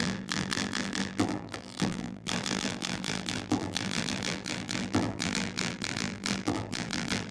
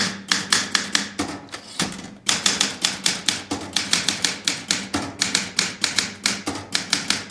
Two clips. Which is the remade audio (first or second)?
first